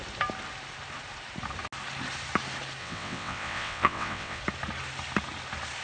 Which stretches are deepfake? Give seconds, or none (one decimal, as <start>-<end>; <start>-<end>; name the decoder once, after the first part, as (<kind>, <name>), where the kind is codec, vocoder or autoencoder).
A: 2.8-4.4 (vocoder, WaveNeXt)